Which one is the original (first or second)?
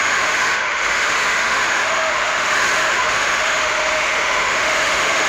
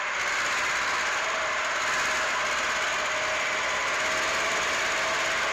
second